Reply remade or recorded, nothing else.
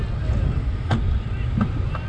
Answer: recorded